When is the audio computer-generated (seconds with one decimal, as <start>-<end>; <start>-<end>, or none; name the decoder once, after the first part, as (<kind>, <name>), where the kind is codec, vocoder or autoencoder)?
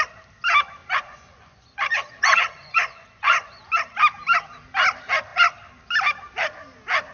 0.8-3.7 (vocoder, Vocos)